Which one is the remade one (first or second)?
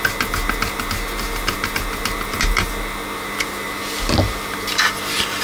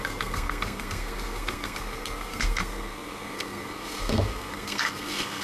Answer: second